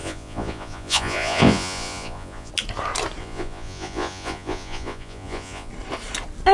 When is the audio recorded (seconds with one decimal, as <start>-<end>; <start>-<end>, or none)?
2.5-3.2; 5.7-6.5